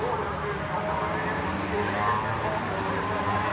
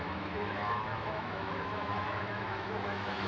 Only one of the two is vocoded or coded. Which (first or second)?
second